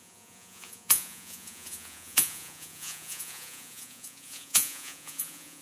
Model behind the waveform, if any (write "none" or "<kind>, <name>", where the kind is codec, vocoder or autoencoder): vocoder, Vocos